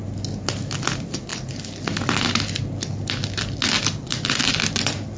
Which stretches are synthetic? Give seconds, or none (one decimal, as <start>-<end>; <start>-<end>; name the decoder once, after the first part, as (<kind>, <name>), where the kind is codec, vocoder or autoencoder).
none